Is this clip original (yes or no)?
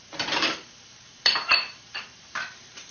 no